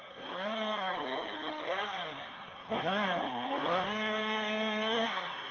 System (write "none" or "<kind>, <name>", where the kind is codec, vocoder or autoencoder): codec, SNAC